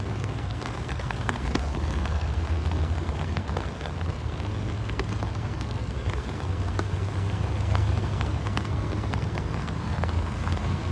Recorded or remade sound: remade